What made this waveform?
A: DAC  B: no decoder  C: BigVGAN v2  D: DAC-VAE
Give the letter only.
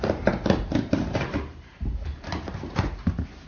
C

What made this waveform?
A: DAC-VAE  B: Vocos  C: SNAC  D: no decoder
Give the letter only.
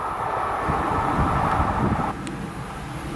D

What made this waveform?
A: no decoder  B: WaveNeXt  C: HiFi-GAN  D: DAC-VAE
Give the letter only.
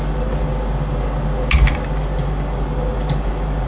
A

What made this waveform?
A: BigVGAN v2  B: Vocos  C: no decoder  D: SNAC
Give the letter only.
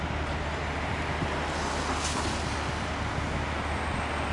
C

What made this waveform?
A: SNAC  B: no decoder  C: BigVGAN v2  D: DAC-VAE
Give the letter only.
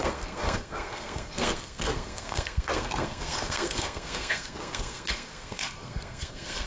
A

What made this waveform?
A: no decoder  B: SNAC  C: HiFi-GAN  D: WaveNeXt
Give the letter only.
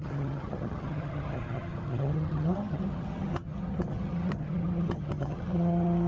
C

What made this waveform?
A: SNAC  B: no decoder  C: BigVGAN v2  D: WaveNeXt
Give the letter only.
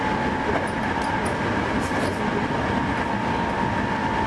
B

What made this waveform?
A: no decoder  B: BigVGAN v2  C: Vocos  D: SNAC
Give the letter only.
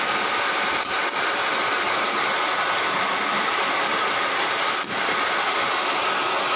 A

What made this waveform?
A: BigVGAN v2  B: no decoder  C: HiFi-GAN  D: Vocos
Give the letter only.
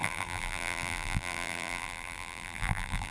A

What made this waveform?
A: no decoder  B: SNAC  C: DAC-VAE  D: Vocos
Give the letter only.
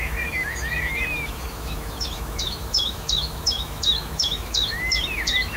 C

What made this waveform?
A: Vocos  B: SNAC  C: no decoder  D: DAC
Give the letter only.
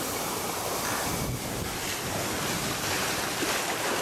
C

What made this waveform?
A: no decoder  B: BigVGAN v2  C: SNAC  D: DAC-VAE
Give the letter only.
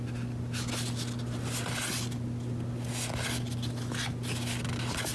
A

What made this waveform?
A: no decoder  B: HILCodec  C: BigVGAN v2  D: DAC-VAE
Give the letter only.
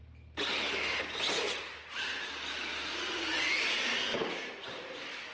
A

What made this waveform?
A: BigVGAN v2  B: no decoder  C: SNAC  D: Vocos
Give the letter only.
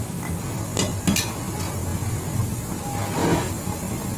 B